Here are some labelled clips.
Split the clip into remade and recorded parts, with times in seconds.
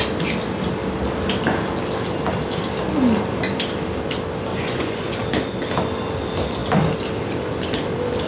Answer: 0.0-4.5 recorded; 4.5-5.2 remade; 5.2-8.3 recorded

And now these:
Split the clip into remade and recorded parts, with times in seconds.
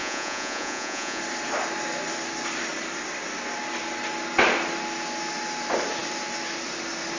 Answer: 0.0-1.2 remade; 1.2-7.2 recorded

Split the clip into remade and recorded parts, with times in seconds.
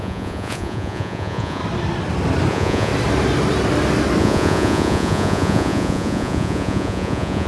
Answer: 0.0-1.6 remade; 1.6-2.5 recorded; 2.5-2.9 remade; 2.9-4.2 recorded; 4.2-7.5 remade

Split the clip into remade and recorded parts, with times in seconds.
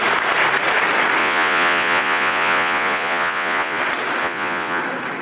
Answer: 0.0-1.2 recorded; 1.2-3.8 remade; 3.8-4.2 recorded; 4.2-4.8 remade; 4.8-5.2 recorded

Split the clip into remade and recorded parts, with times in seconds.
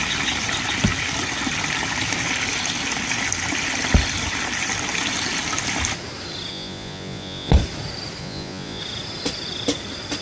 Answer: 0.0-6.5 recorded; 6.5-7.5 remade; 7.5-8.2 recorded; 8.2-8.8 remade; 8.8-10.2 recorded